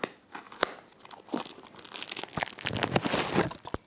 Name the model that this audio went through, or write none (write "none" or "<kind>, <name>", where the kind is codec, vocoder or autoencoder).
none